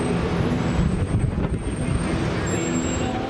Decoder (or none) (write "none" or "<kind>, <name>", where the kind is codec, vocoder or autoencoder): none